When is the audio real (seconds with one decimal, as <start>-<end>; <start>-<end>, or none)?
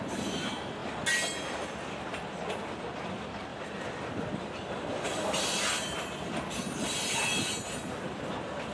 0.0-3.5; 4.1-4.9; 7.5-8.7